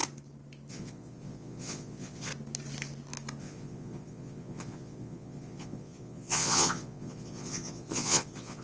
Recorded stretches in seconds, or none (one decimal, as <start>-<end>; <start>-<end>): 0.0-0.7; 2.3-3.4